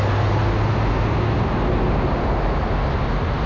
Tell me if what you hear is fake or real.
real